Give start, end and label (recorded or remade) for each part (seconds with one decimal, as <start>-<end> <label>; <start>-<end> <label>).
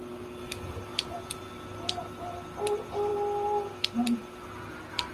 0.0-0.9 recorded; 0.9-1.5 remade; 1.5-5.1 recorded